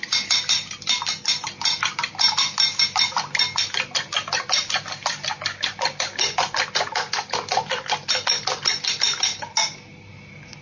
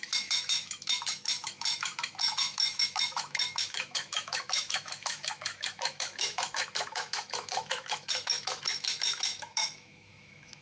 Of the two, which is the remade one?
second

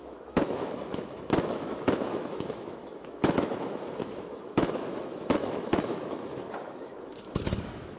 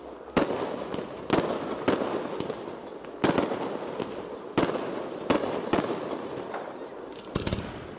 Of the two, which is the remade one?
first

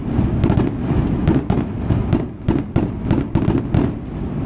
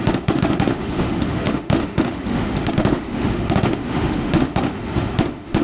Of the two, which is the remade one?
second